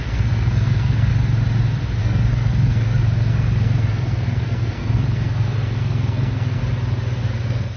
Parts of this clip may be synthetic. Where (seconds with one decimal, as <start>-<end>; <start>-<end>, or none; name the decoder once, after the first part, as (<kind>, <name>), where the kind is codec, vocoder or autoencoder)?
0.0-1.1 (codec, SNAC); 2.0-6.6; 7.2-7.8